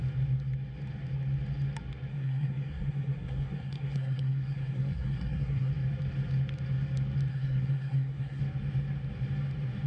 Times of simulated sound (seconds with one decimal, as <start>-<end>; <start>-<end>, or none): 2.1-5.7; 7.3-8.4